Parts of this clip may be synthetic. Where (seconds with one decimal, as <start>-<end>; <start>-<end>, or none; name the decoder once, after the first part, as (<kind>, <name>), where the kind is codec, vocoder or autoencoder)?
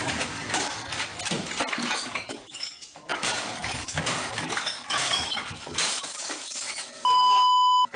0.0-1.1 (codec, DAC); 1.7-8.0